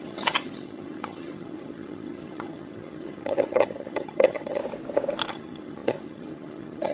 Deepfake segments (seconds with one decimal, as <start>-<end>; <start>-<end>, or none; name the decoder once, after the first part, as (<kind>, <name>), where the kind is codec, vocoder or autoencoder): 0.0-4.6 (vocoder, HiFi-GAN); 5.3-6.9